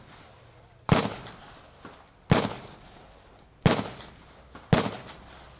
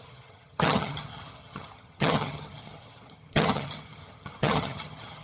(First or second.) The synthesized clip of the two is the second